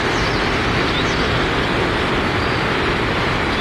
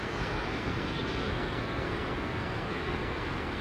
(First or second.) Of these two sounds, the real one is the first